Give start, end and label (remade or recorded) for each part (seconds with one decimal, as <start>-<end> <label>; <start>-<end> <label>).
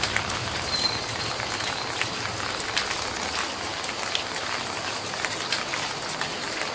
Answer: 0.0-0.4 recorded; 0.4-1.2 remade; 1.2-6.7 recorded